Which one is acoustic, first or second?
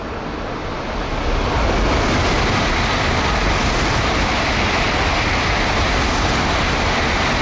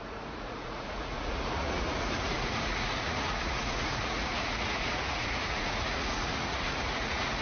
first